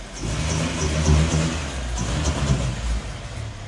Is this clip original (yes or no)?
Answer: yes